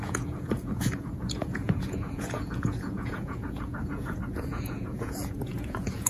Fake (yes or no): yes